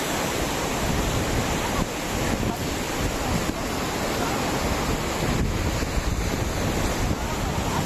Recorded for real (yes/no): yes